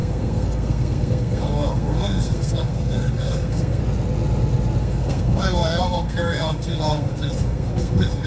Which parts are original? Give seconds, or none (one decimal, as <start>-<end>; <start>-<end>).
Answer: 3.8-4.8